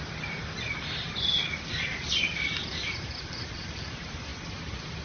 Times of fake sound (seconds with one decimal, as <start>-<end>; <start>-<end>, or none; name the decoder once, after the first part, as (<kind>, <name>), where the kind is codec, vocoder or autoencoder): 0.0-5.0 (vocoder, BigVGAN v2)